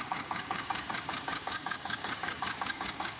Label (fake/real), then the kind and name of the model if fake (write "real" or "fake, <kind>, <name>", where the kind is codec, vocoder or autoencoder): fake, codec, DAC